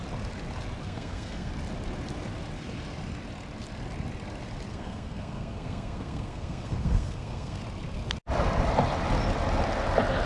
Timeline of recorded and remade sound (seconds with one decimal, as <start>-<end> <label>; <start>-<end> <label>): 0.0-0.8 recorded; 0.8-1.5 remade; 1.5-4.7 recorded; 4.7-7.6 remade; 7.6-10.3 recorded